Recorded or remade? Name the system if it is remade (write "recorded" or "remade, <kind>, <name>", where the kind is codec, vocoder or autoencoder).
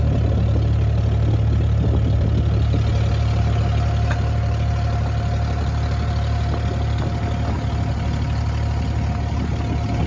recorded